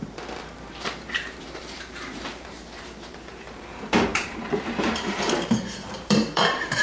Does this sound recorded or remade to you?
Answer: remade